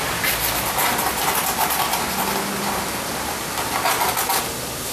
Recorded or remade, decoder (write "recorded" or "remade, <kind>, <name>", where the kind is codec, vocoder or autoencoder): recorded